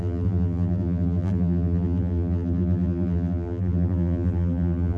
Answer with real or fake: fake